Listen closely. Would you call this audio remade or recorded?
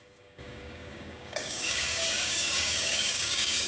remade